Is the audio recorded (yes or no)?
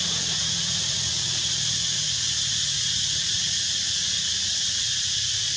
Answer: no